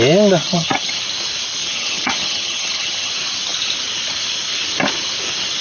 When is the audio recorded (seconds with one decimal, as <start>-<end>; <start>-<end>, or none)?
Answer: 0.0-0.4; 1.0-1.6; 3.1-5.6